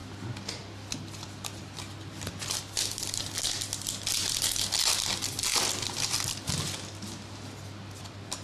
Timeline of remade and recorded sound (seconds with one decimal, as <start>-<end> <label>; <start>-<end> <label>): 0.0-1.6 remade; 1.6-5.5 recorded; 5.5-8.0 remade; 8.0-8.4 recorded